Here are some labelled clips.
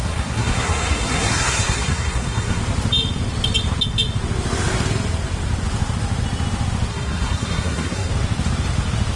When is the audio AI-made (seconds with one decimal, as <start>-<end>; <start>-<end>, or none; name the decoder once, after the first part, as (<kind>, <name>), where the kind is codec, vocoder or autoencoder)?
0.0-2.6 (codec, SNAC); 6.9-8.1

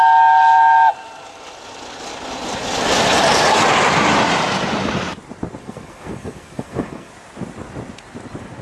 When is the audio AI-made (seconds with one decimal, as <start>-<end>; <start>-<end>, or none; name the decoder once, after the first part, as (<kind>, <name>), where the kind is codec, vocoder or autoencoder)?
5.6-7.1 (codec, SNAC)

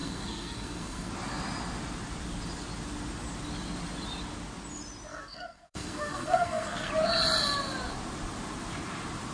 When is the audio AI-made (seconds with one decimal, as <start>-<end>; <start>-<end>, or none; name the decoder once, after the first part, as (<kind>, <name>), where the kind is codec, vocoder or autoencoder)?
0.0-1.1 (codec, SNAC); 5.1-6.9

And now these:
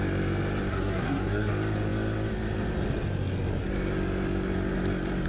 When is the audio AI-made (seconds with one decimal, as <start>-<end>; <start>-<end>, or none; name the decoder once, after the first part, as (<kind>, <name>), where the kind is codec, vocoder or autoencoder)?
0.7-1.5 (codec, SNAC)

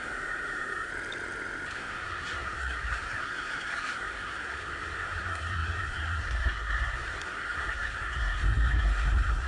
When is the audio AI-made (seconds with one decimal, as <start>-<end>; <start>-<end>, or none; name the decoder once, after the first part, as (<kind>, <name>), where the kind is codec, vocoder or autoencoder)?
0.0-0.9 (codec, SNAC); 1.7-9.5